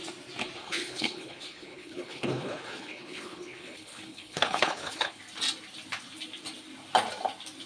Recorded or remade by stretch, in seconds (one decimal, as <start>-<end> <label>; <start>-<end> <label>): 0.0-0.6 recorded; 0.6-5.2 remade; 5.2-7.7 recorded